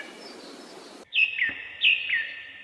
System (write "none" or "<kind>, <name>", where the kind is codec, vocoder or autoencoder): none